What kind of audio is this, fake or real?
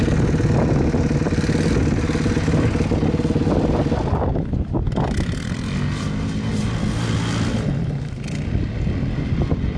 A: real